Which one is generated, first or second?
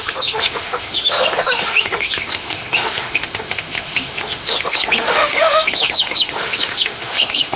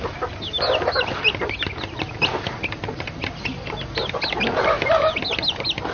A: first